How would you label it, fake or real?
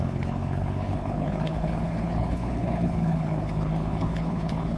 fake